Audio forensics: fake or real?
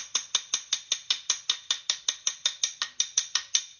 real